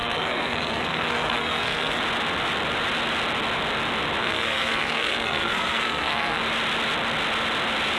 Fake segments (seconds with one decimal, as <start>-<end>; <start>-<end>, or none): 0.0-2.0; 4.2-6.4